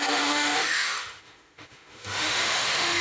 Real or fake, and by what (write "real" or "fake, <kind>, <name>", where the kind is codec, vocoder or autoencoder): fake, autoencoder, DAC-VAE